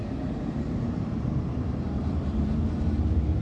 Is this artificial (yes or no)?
yes